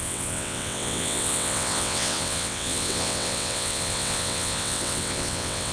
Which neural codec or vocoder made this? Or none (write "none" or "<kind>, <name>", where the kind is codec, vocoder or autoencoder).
vocoder, WaveNeXt